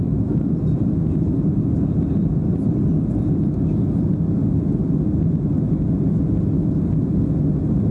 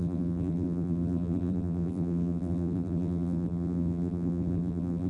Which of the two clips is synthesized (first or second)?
second